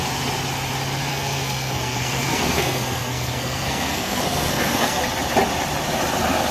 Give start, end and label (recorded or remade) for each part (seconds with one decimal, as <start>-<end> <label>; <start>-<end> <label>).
0.0-1.1 recorded; 1.1-5.0 remade; 5.0-6.5 recorded